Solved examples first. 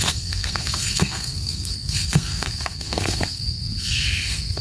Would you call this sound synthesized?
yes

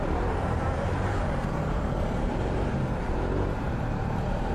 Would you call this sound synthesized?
yes